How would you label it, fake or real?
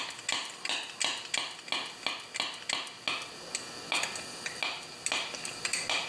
real